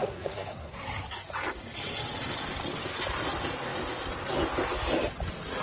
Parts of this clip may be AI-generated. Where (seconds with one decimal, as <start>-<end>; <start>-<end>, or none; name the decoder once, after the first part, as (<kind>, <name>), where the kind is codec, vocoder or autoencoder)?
0.0-0.8 (codec, SNAC)